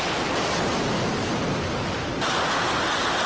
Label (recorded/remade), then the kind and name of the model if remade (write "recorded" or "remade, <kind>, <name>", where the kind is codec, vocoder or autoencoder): recorded